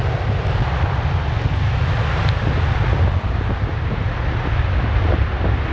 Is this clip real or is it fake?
real